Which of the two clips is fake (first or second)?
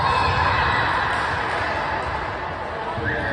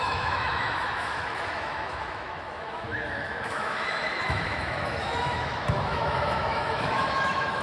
second